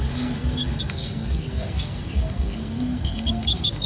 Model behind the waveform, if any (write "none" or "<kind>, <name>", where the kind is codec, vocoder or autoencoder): codec, SNAC